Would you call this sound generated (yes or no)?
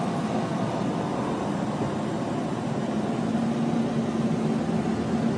no